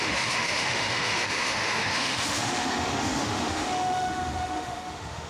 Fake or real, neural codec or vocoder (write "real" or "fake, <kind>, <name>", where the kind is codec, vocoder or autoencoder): fake, autoencoder, DAC-VAE